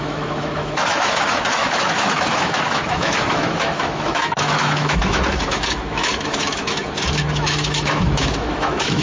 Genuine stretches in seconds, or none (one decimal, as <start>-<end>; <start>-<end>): none